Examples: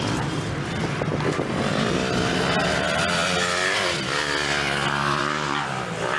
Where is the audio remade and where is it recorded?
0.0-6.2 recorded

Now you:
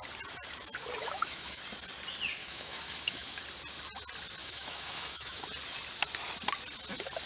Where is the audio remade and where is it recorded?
0.0-1.0 recorded; 1.0-1.6 remade; 1.6-2.4 recorded; 2.4-3.4 remade; 3.4-4.4 recorded; 4.4-5.4 remade; 5.4-7.3 recorded

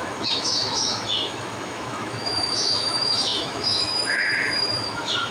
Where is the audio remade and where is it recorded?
0.0-5.3 remade

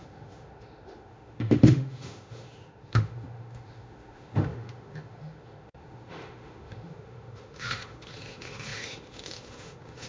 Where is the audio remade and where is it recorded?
0.0-10.1 remade

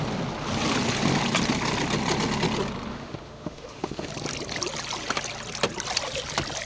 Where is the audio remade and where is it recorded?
0.0-2.9 recorded; 2.9-4.1 remade; 4.1-6.7 recorded

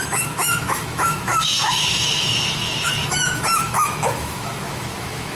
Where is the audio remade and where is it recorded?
0.0-5.4 remade

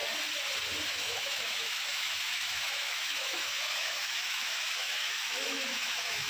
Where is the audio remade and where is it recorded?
0.0-0.9 recorded; 0.9-6.3 remade

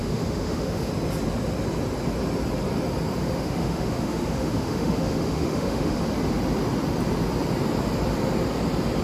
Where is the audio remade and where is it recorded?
0.0-0.9 remade; 0.9-3.2 recorded; 3.2-6.0 remade; 6.0-9.0 recorded